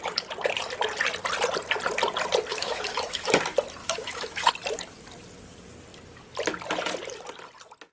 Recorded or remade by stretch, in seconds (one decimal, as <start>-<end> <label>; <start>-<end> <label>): 0.0-2.5 recorded; 2.5-3.4 remade; 3.4-3.8 recorded; 3.8-4.5 remade; 4.5-7.9 recorded